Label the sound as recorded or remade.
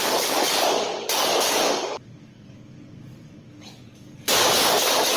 remade